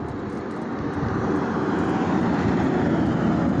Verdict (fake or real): real